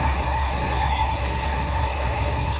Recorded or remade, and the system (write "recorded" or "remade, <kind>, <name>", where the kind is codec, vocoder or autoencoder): remade, codec, SNAC